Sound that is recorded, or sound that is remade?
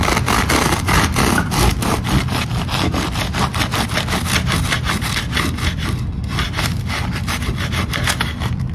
recorded